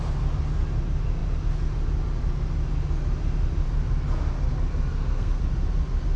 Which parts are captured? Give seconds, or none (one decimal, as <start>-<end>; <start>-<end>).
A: 0.0-4.9; 5.4-6.2